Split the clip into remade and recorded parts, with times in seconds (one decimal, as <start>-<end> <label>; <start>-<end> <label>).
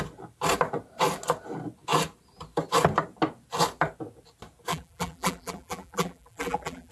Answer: 0.0-4.7 recorded; 4.7-6.9 remade